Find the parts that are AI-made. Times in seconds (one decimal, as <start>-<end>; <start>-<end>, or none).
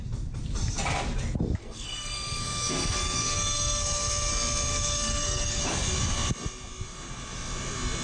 1.6-4.3; 4.7-5.6